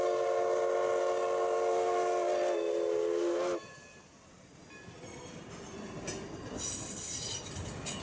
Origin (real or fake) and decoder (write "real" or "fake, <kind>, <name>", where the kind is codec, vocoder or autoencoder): real